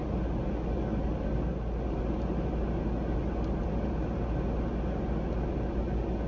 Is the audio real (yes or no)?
yes